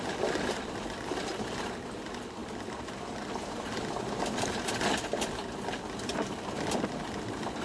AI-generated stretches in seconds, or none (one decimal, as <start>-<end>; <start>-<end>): none